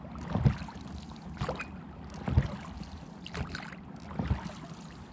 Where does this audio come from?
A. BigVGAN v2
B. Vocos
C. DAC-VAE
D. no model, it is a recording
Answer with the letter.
D